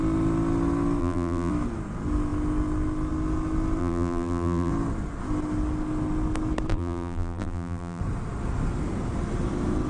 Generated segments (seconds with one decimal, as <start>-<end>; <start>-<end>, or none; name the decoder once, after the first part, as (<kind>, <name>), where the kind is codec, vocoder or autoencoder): 1.0-1.5 (vocoder, BigVGAN v2); 3.8-4.7; 6.7-8.0